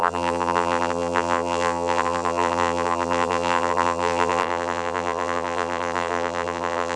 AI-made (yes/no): yes